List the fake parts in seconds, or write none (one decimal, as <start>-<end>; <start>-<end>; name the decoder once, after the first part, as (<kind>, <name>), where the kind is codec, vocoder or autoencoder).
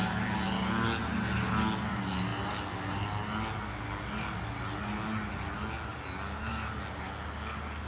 none